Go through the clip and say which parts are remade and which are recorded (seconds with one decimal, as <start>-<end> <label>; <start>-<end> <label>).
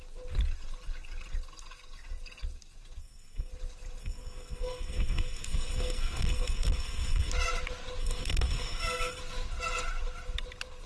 0.0-3.0 recorded; 3.0-3.5 remade; 3.5-4.0 recorded; 4.0-7.3 remade; 7.3-8.0 recorded; 8.0-9.2 remade; 9.2-10.9 recorded